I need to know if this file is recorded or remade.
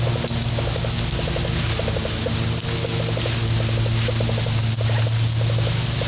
recorded